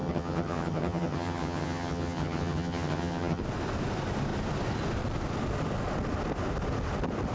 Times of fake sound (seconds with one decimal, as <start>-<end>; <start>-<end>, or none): 0.0-3.4